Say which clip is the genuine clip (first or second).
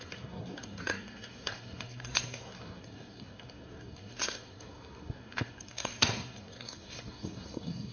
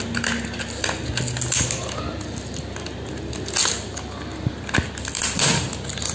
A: second